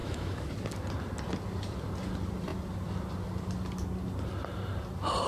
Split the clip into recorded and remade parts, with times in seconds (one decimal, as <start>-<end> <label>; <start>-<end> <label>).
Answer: 0.0-0.5 remade; 0.5-5.3 recorded